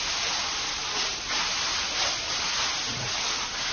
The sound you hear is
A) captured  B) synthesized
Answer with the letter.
A